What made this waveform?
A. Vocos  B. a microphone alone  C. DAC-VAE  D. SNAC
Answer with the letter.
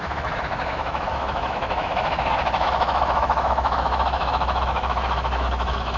C